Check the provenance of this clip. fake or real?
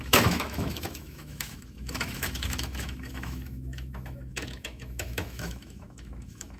fake